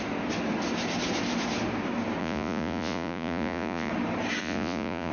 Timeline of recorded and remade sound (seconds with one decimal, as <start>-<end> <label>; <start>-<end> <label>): 0.0-2.2 recorded; 2.2-3.9 remade; 3.9-4.4 recorded; 4.4-5.1 remade